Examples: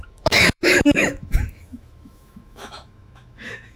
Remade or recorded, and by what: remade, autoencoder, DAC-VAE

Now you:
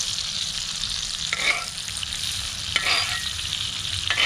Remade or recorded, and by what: remade, vocoder, BigVGAN v2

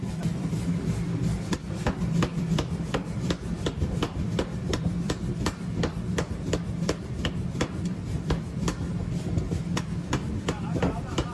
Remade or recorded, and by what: recorded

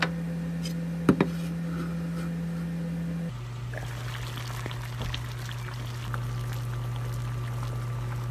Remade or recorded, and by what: recorded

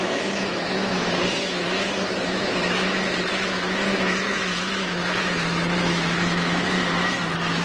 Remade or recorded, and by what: remade, autoencoder, DAC-VAE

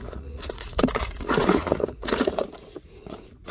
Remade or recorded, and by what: remade, vocoder, Vocos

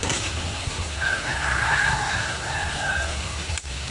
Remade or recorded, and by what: remade, codec, SNAC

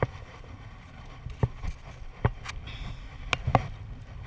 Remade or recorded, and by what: recorded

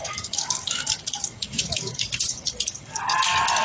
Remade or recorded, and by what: remade, codec, DAC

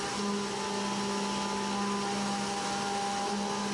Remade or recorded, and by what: recorded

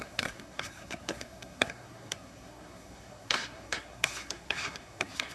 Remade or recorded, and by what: remade, codec, SNAC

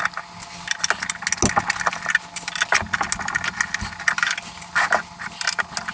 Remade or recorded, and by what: recorded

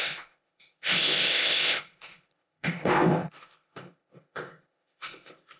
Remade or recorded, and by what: remade, codec, ZipCodec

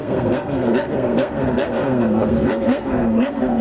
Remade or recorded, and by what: remade, codec, SNAC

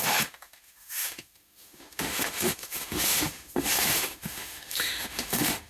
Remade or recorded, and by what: remade, autoencoder, DAC-VAE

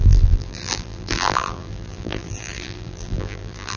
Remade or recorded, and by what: remade, vocoder, BigVGAN v2